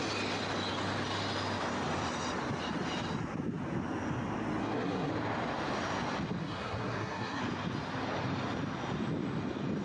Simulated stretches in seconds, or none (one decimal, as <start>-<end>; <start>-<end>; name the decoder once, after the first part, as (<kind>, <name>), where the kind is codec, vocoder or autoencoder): 4.6-5.1 (codec, SNAC); 6.4-7.4